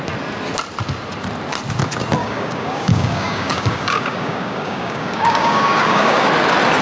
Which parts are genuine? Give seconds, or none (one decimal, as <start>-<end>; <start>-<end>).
0.0-2.2; 6.3-6.8